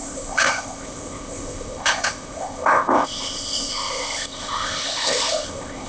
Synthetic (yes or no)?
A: yes